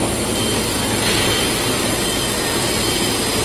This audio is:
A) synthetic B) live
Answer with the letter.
B